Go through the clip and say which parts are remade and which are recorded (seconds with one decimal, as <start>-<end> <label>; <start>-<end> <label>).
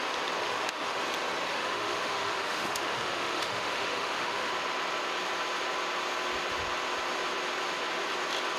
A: 0.0-0.4 recorded; 0.4-1.0 remade; 1.0-1.5 recorded; 1.5-4.5 remade; 4.5-8.6 recorded